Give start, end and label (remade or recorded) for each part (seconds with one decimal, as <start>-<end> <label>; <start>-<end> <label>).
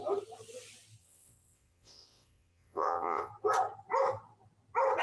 0.0-1.0 recorded; 1.0-3.3 remade; 3.3-5.0 recorded